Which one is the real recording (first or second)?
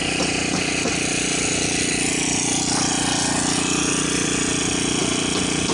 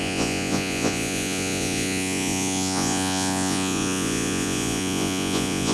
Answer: first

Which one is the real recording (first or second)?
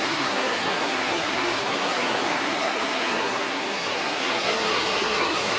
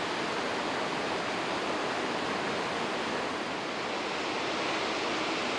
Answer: second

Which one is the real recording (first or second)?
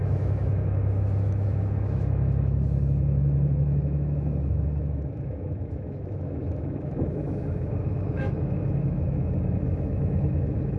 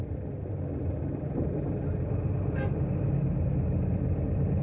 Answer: second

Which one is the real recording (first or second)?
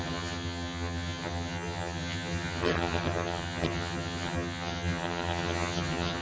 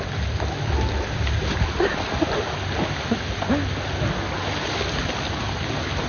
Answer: second